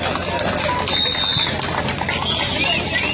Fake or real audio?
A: real